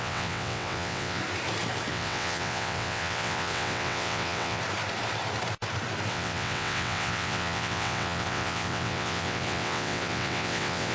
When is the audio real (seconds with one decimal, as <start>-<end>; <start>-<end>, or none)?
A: 1.2-1.9; 4.6-6.1